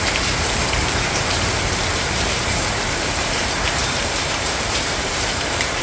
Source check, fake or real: fake